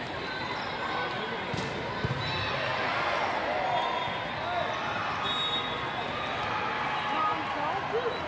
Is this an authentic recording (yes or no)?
yes